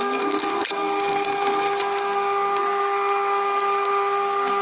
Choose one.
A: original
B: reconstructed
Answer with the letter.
B